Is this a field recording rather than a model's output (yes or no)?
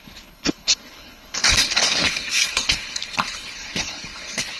no